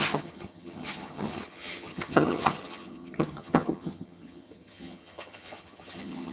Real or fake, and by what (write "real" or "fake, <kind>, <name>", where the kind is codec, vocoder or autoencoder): fake, vocoder, HiFi-GAN